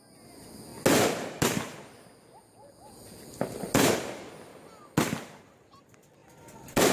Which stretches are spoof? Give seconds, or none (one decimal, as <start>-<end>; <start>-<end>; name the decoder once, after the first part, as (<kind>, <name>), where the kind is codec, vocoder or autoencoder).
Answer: none